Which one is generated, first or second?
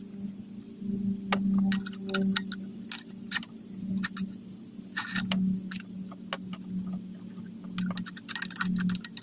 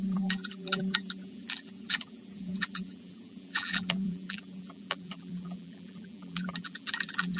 second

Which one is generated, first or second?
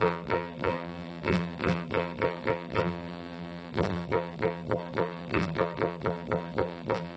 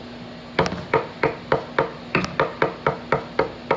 first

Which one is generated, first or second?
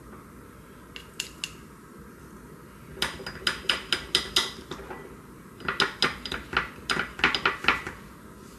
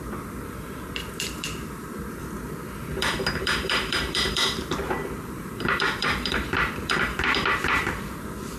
second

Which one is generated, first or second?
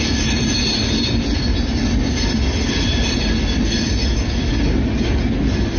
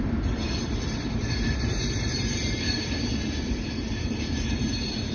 second